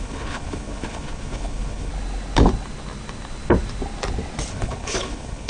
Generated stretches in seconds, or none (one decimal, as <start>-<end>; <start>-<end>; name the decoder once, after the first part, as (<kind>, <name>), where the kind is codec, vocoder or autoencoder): 0.0-1.9 (codec, HILCodec); 4.5-5.5